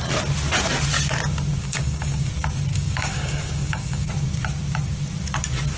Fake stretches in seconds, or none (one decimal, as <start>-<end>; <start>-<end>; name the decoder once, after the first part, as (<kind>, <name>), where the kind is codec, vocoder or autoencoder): 1.6-2.3 (codec, DAC); 2.7-4.1